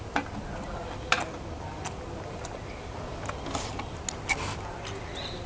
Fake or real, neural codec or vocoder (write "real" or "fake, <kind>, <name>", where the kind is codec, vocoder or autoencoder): real